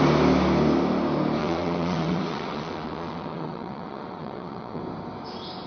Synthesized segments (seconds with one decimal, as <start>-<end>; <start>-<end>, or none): 1.4-4.8

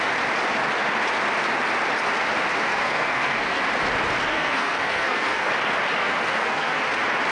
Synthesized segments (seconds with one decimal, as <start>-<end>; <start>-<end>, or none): 2.7-3.6; 4.3-5.5; 6.0-6.8